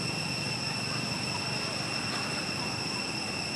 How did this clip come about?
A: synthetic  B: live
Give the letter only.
B